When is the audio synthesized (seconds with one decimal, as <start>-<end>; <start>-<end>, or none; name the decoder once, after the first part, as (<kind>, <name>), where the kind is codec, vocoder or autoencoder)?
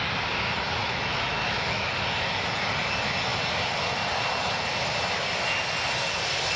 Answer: 0.8-1.9 (autoencoder, DAC-VAE)